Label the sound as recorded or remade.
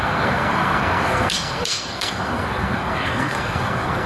remade